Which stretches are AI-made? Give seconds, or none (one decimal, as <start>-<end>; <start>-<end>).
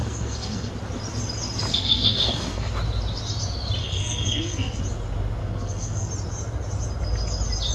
0.0-0.7; 1.7-2.7; 3.8-4.8; 5.4-6.1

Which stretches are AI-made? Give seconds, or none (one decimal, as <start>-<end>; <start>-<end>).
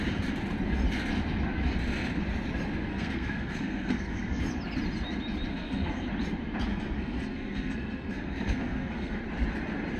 2.9-4.4; 5.5-6.1; 6.7-9.2